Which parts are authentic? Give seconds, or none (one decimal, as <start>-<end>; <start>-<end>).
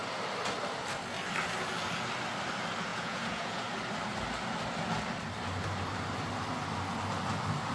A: 0.0-2.9; 3.6-7.7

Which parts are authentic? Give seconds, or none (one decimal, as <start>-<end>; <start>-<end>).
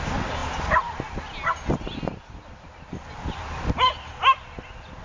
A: 0.0-5.0